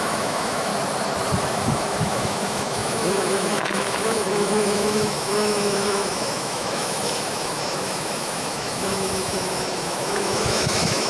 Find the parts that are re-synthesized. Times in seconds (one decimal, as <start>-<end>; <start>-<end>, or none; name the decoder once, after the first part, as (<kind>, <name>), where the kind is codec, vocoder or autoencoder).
0.0-0.7 (autoencoder, DAC-VAE); 1.4-11.1